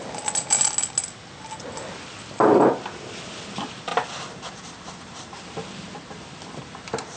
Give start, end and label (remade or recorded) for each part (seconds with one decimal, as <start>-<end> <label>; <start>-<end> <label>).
0.0-7.2 recorded